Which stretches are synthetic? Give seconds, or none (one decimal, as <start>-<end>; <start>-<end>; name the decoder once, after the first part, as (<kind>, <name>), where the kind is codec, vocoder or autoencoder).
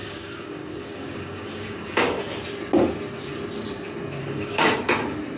0.0-2.2 (codec, DAC); 4.2-4.7